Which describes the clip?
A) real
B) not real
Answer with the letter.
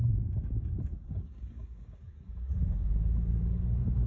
B